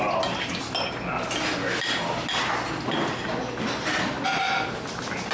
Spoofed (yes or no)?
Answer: no